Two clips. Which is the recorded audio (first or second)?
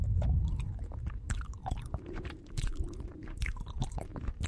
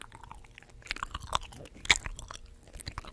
second